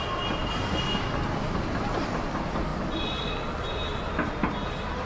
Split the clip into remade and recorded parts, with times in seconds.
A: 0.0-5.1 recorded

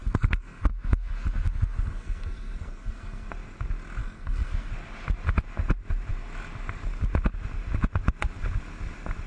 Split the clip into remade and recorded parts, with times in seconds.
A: 0.0-3.3 remade; 3.3-4.0 recorded; 4.0-4.7 remade; 4.7-9.3 recorded

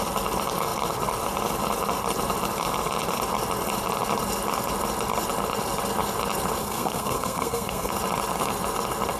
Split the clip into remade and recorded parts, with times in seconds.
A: 0.0-6.6 recorded; 6.6-7.9 remade; 7.9-9.2 recorded

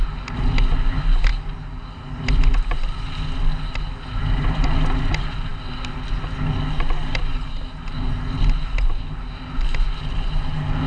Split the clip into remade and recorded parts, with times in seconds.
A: 0.0-10.9 recorded

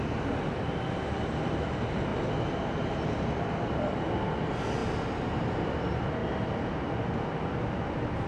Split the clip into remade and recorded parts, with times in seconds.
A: 0.0-8.3 recorded

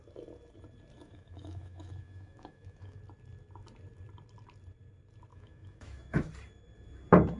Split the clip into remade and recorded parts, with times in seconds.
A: 0.0-1.0 recorded; 1.0-3.0 remade; 3.0-5.3 recorded; 5.3-6.3 remade; 6.3-7.4 recorded

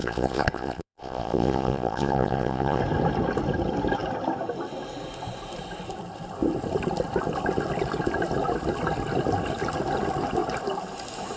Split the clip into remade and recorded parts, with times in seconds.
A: 0.0-2.8 remade; 2.8-11.4 recorded